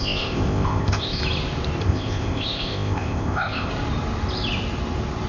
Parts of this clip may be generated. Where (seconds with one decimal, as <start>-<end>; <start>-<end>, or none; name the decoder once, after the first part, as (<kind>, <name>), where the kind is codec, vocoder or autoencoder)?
0.0-1.2 (codec, ZipCodec); 1.8-3.7